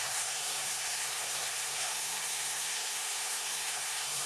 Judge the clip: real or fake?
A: fake